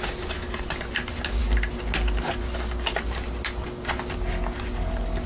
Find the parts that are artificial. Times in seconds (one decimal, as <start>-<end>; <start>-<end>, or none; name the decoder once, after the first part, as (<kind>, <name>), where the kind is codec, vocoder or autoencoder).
none